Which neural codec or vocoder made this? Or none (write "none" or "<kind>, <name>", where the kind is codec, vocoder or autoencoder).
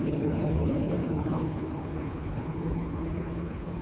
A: codec, HILCodec